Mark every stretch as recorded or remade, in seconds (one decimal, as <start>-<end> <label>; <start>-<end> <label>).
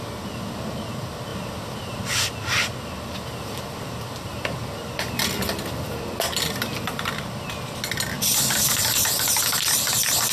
0.0-10.3 recorded